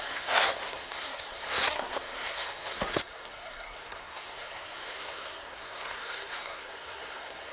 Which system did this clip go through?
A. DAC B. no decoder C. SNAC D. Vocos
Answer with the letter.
C